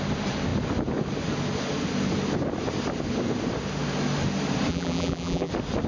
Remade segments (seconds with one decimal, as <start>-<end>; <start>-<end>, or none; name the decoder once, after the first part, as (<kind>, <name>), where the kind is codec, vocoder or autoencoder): 4.7-5.5 (vocoder, BigVGAN v2)